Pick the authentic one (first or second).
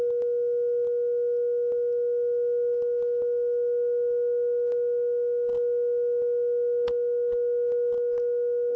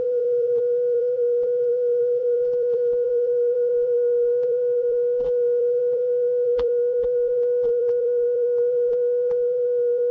first